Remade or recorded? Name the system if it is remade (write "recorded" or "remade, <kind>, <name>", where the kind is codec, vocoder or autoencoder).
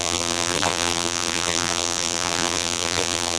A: remade, vocoder, BigVGAN v2